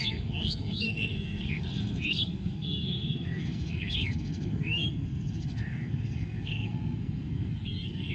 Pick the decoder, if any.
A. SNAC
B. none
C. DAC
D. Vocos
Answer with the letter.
A